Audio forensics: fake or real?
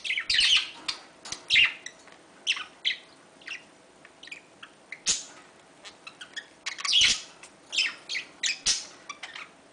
real